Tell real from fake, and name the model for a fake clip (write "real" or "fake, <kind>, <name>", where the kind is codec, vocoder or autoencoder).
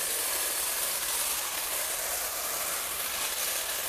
fake, vocoder, BigVGAN v2